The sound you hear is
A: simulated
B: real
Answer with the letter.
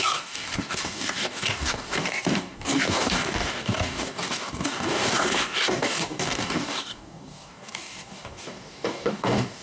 A